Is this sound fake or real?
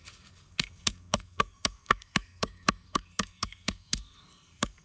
fake